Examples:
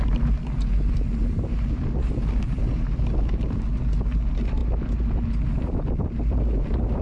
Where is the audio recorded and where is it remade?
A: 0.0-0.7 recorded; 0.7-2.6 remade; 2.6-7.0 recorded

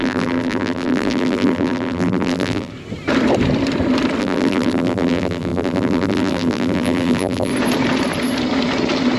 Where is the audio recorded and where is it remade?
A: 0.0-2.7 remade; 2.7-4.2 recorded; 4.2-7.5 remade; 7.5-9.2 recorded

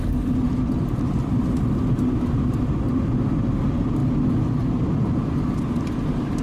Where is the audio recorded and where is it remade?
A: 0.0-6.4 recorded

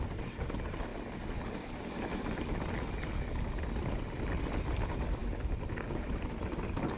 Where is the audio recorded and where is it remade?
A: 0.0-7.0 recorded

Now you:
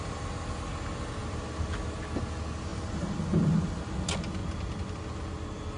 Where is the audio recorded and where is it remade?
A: 0.0-2.7 recorded; 2.7-3.8 remade; 3.8-5.8 recorded